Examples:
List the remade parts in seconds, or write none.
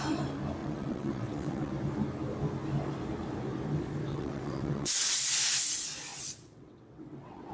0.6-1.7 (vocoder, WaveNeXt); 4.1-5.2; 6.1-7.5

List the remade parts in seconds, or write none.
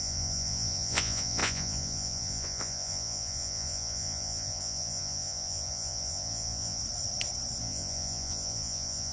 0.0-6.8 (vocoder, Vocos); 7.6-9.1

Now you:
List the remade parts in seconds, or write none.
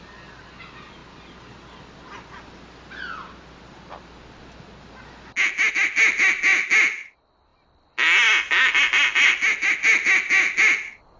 none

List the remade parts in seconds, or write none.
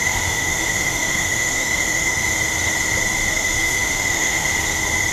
0.0-2.3 (autoencoder, DAC-VAE); 3.3-4.5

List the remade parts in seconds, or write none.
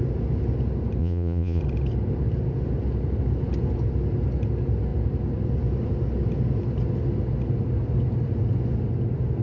1.0-1.6 (vocoder, Vocos)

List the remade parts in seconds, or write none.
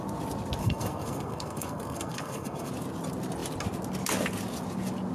0.6-2.7 (codec, SNAC)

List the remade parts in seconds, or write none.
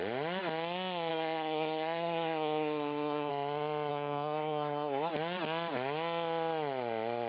1.1-3.3 (codec, SNAC); 3.9-5.1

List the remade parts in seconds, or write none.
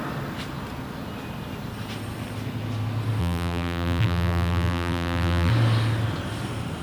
3.2-5.5 (vocoder, BigVGAN v2)